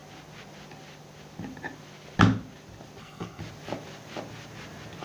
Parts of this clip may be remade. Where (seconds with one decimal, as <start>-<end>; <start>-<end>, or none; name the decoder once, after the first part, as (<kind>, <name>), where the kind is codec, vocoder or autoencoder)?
3.0-3.4 (codec, SNAC)